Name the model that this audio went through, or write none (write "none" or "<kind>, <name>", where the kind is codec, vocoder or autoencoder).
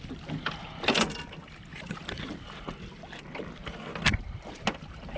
none